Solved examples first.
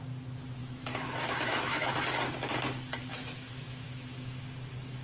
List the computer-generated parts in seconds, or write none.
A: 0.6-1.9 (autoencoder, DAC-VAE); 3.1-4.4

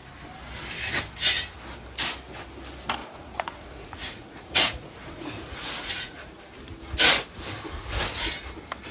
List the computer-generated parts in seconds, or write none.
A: 3.0-6.4 (vocoder, Vocos)